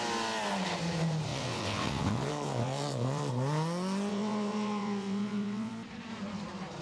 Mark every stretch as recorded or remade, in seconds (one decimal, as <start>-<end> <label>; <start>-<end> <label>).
0.0-1.3 recorded; 1.3-3.3 remade; 3.3-4.1 recorded; 4.1-5.7 remade; 5.7-6.8 recorded